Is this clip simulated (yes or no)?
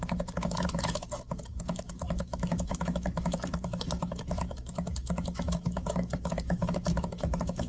yes